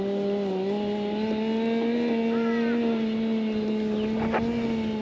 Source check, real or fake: real